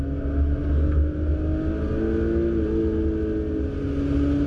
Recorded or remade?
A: recorded